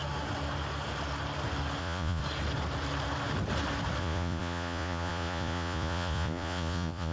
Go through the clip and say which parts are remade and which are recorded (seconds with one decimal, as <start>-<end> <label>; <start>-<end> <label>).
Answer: 0.0-1.8 recorded; 1.8-2.2 remade; 2.2-4.0 recorded; 4.0-7.1 remade